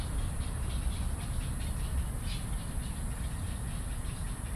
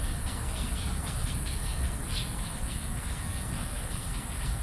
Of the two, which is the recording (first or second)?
first